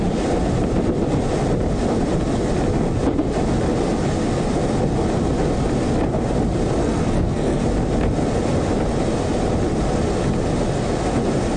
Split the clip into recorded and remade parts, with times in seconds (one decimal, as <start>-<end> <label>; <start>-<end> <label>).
0.0-6.8 recorded; 6.8-7.6 remade; 7.6-11.6 recorded